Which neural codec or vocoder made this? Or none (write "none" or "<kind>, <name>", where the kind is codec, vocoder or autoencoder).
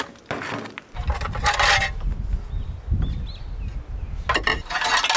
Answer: none